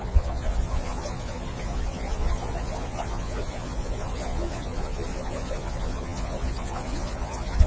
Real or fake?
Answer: fake